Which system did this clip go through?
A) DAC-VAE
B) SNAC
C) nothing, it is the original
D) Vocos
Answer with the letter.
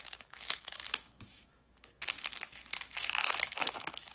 A